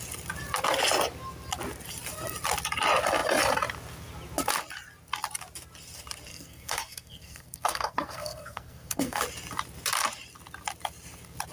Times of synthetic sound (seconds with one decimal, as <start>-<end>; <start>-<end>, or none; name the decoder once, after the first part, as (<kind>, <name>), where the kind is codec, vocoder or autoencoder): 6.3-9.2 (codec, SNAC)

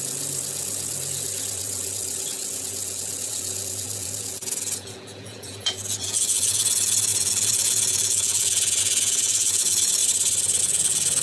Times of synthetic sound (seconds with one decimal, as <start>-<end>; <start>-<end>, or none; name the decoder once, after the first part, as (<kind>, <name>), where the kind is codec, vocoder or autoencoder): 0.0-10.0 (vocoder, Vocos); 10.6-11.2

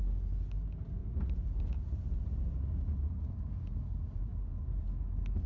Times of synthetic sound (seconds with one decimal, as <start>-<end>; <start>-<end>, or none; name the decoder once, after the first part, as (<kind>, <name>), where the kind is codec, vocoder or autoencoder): none